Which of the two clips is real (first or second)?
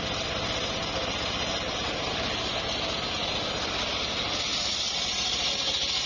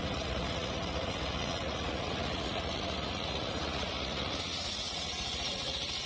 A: first